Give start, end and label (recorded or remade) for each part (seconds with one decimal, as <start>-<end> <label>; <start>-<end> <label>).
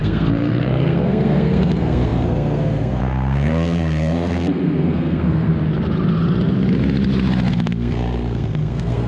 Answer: 0.0-5.5 remade; 5.5-7.5 recorded; 7.5-9.1 remade